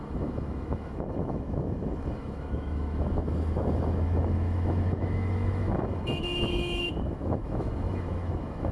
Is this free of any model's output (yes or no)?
no